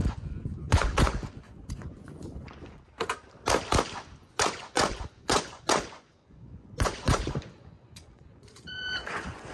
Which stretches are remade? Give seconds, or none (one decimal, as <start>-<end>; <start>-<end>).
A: 0.0-2.8; 4.2-9.5